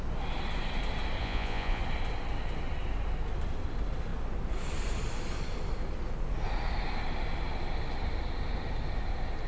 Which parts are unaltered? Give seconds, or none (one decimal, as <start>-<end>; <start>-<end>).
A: 0.0-1.2; 1.8-9.5